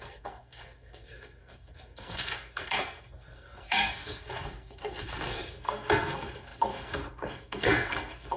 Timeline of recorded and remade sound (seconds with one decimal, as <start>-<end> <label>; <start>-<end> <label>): 0.0-8.4 remade